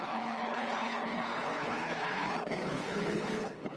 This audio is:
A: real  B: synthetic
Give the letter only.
B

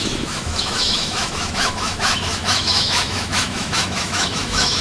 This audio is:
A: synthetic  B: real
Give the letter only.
A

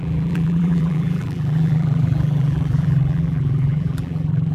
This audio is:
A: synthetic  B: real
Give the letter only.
A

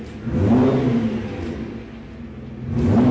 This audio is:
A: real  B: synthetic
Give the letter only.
A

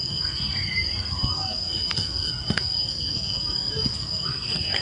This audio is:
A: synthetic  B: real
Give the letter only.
A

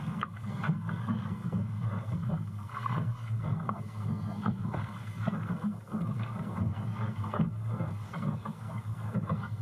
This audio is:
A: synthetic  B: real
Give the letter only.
A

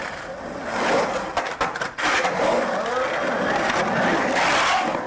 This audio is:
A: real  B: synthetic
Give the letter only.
A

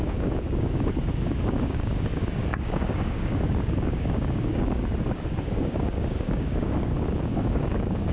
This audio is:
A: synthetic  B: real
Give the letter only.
A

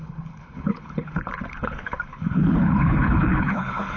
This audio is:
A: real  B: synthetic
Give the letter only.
B